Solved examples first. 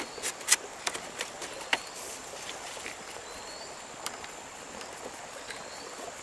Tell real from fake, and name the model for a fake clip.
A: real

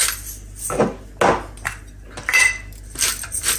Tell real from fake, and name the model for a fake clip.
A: real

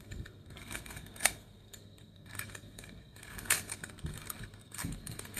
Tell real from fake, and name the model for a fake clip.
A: fake, codec, SNAC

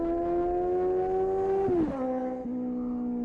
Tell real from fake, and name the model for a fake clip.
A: real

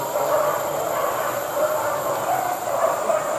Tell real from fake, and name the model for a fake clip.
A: real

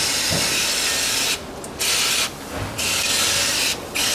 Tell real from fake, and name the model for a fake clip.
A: real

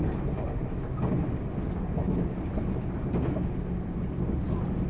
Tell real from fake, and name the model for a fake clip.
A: real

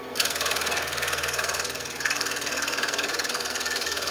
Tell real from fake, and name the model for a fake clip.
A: fake, codec, SNAC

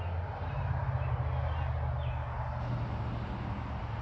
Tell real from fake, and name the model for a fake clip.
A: real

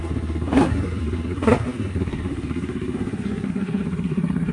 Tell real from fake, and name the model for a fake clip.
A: fake, codec, SNAC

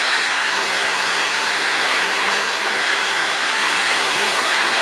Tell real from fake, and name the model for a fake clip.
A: fake, codec, SNAC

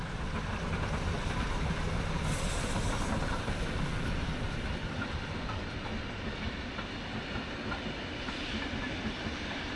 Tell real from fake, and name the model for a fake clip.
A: real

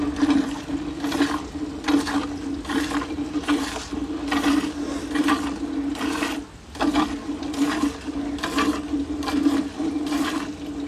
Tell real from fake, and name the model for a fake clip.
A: real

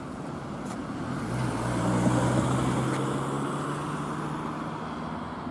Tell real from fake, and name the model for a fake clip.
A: real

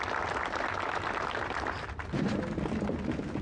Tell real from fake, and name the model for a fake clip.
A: real